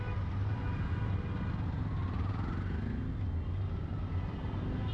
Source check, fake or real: real